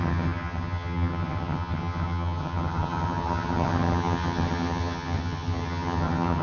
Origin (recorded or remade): remade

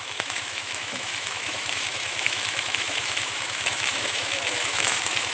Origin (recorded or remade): remade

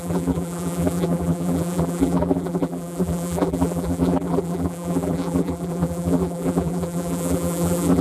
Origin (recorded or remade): remade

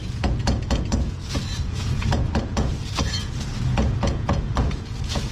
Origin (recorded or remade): remade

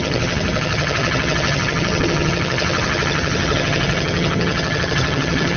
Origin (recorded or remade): remade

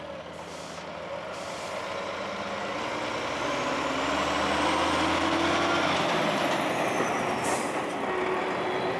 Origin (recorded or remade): recorded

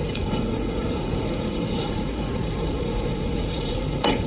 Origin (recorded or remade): remade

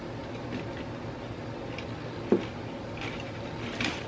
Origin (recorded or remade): recorded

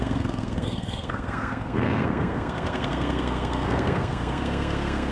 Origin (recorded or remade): remade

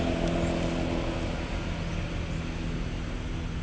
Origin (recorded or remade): recorded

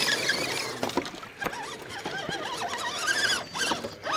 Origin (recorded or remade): recorded